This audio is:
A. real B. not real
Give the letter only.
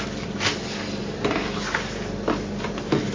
A